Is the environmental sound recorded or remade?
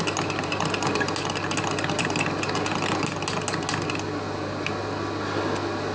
recorded